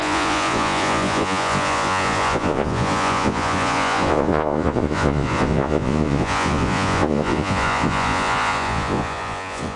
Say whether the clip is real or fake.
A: fake